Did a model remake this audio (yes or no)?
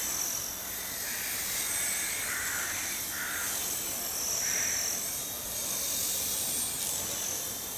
no